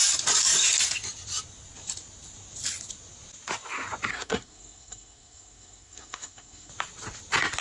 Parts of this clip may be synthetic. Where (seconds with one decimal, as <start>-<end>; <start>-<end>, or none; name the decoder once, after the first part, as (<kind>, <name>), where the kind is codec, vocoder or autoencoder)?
4.1-6.7 (codec, SNAC)